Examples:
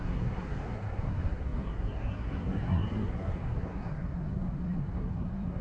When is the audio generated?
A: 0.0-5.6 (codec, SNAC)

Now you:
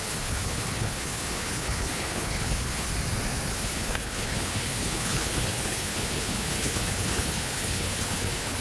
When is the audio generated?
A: 0.0-2.9 (codec, HILCodec); 3.5-8.6

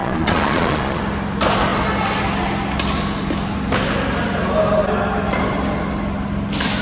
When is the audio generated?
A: 0.0-1.0 (vocoder, Vocos)

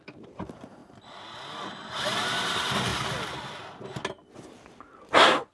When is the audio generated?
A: 0.0-0.8 (vocoder, BigVGAN v2); 1.8-2.9

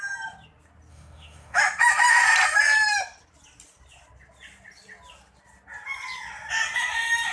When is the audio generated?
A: 0.9-1.6 (autoencoder, DAC-VAE)

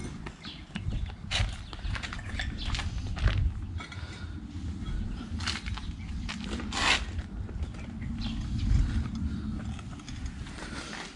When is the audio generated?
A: none

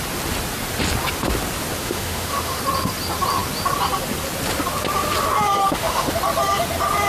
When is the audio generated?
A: 1.8-2.6 (autoencoder, DAC-VAE); 5.6-6.1

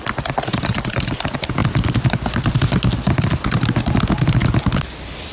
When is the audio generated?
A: none